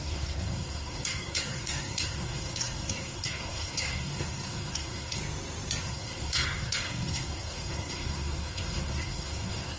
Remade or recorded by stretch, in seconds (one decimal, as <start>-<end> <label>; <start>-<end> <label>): 0.0-5.2 remade; 5.2-5.8 recorded; 5.8-9.8 remade